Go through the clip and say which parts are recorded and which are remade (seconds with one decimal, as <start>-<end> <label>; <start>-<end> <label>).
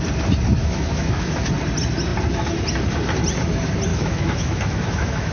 0.0-0.6 recorded; 0.6-1.5 remade; 1.5-3.9 recorded; 3.9-5.3 remade